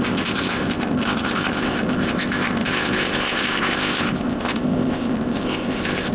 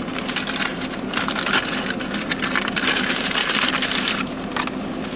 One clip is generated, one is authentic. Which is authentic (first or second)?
second